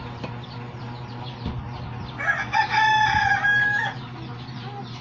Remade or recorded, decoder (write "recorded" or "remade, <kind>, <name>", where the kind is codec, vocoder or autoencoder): recorded